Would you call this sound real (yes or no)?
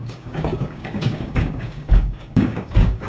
no